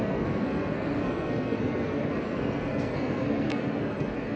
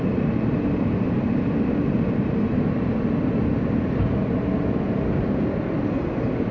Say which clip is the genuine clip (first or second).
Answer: second